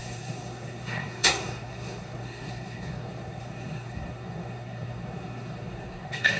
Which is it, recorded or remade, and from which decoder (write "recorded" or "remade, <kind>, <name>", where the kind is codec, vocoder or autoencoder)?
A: remade, codec, SNAC